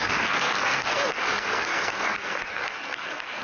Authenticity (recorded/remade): remade